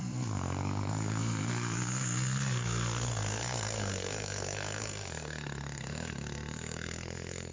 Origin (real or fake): fake